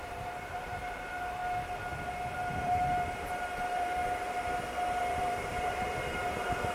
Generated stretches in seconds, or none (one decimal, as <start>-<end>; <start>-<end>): 0.0-1.4; 2.3-4.0; 5.0-6.7